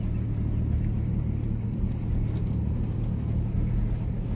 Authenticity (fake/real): real